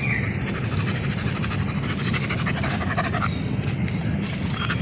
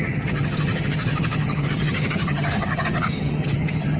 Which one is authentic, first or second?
first